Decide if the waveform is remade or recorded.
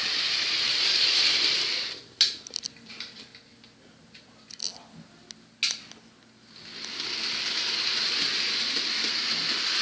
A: recorded